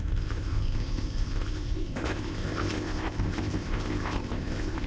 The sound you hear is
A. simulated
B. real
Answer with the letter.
A